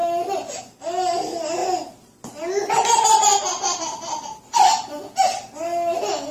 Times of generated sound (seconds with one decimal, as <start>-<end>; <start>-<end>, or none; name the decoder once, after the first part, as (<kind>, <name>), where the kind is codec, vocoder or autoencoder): none